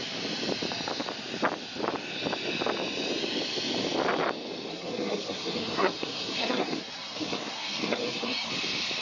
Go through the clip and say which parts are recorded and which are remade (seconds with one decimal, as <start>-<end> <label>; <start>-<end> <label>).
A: 0.0-4.7 recorded; 4.7-8.5 remade; 8.5-9.0 recorded